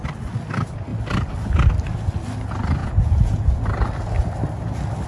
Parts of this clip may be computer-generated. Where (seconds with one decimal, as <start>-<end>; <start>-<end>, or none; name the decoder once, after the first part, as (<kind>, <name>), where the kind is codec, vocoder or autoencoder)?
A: 2.8-3.6 (vocoder, Vocos)